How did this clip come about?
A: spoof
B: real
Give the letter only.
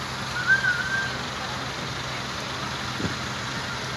B